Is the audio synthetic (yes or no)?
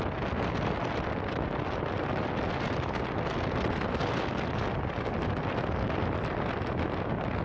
no